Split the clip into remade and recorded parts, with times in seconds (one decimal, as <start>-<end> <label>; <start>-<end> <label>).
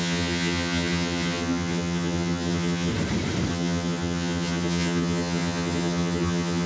0.0-2.9 remade; 2.9-3.5 recorded; 3.5-6.7 remade